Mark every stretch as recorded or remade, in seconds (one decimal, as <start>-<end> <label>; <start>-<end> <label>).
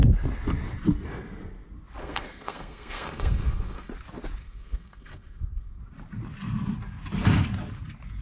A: 0.0-2.0 recorded; 2.0-3.9 remade; 3.9-4.4 recorded; 4.4-5.8 remade; 5.8-8.2 recorded